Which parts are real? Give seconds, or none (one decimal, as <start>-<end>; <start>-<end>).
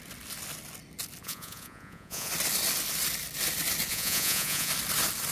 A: 0.0-1.2; 2.3-3.9; 4.7-5.3